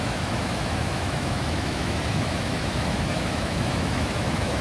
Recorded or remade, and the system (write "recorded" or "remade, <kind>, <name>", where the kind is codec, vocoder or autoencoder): remade, autoencoder, DAC-VAE